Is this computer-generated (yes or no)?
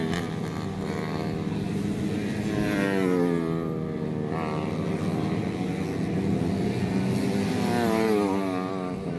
no